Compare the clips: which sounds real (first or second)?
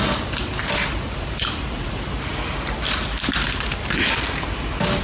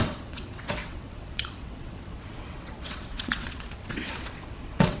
first